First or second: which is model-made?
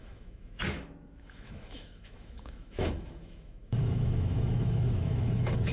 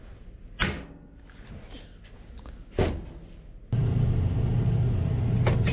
first